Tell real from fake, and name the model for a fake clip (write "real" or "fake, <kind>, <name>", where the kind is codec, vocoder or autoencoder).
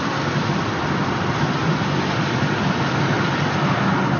fake, vocoder, BigVGAN v2